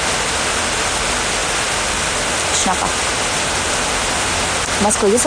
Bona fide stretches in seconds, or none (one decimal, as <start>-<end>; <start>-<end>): 0.0-5.3